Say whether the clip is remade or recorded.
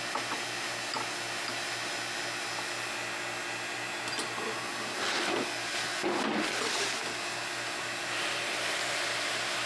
recorded